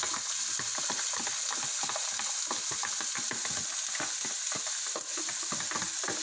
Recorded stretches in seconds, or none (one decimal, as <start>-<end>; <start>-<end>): 0.0-6.2

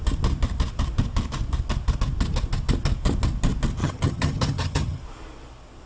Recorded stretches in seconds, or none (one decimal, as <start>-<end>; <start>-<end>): 0.0-3.8; 5.0-5.9